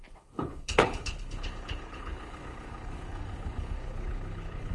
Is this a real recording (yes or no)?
no